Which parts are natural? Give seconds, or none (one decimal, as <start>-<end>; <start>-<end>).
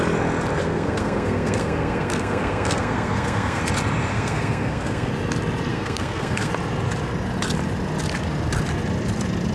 0.0-0.6; 3.6-4.1; 5.1-5.7; 6.5-9.5